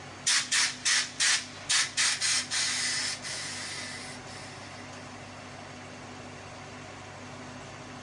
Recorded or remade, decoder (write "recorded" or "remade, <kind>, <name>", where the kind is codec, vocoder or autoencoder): recorded